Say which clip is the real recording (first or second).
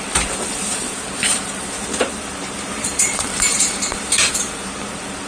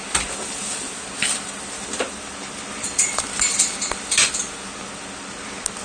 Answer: second